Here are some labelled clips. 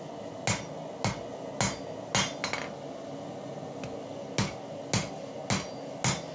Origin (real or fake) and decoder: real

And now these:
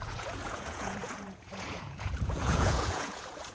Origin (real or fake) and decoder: fake, vocoder, Vocos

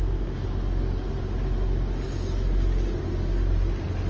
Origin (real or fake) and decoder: real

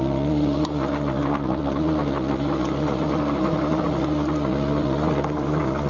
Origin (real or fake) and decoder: fake, vocoder, Vocos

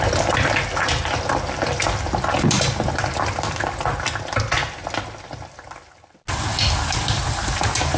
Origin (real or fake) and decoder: real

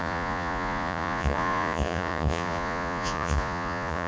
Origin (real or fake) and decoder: fake, vocoder, Vocos